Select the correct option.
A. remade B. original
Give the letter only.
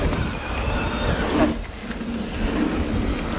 B